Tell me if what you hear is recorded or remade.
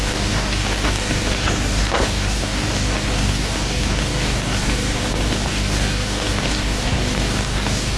remade